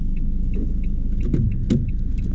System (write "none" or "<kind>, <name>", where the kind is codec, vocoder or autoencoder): none